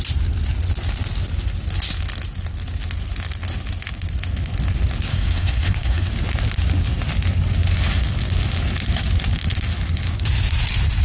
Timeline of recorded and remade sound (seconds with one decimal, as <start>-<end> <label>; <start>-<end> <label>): 0.0-5.1 recorded; 5.1-6.1 remade; 6.1-11.0 recorded